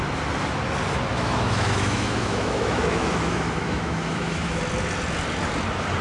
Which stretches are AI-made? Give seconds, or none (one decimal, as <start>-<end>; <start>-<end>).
1.1-4.6